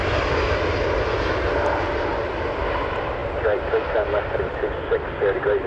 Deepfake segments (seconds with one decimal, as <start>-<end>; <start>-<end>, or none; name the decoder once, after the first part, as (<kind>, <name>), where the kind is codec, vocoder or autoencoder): none